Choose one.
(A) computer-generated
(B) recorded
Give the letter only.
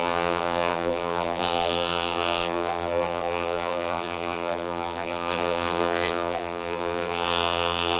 A